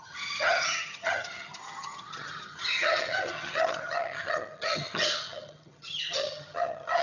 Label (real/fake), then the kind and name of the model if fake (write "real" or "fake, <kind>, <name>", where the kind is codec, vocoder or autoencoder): fake, vocoder, HiFi-GAN